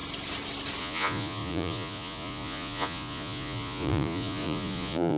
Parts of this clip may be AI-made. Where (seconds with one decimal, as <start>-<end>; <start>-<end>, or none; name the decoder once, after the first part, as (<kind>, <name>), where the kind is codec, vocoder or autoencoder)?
0.8-5.2 (vocoder, Vocos)